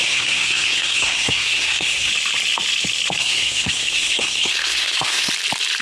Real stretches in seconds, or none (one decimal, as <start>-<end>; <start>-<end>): 2.1-3.2; 5.3-5.8